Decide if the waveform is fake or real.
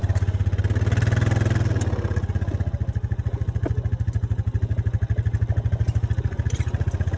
real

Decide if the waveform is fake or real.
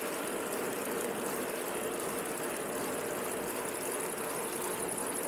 real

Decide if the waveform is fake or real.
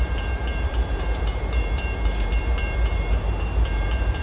fake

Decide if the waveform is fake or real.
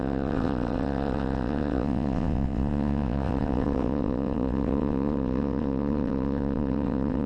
fake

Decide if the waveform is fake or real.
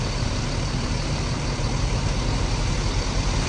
fake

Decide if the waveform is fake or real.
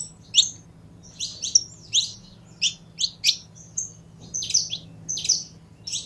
real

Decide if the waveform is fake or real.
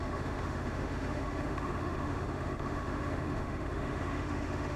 fake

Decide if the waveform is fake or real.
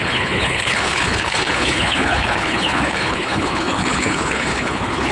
fake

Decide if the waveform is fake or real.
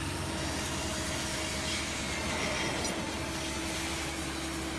real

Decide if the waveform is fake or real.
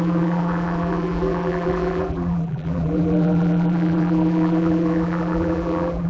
fake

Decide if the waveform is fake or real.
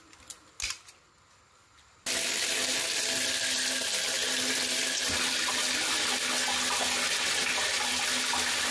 real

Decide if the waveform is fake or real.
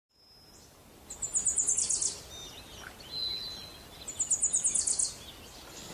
real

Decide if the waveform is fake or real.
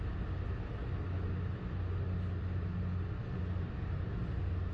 real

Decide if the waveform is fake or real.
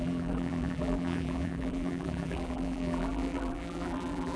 fake